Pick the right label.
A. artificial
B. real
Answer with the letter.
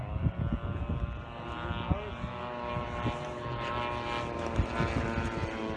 B